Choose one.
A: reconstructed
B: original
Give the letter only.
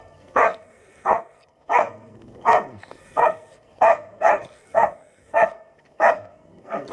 A